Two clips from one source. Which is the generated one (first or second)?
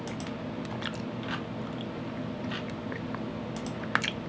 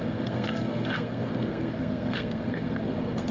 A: second